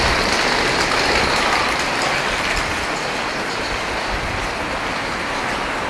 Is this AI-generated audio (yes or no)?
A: no